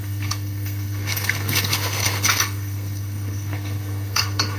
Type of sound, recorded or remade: remade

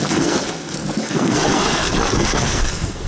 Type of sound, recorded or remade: remade